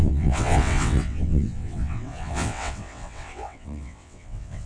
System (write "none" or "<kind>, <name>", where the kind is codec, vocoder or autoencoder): vocoder, WaveNeXt